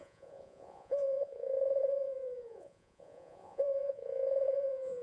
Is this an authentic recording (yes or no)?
no